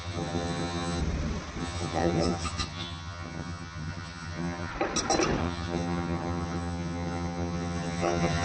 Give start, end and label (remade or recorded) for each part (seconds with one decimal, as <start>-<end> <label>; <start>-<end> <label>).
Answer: 0.0-1.0 remade; 1.0-1.6 recorded; 1.6-4.7 remade; 4.7-5.4 recorded; 5.4-8.4 remade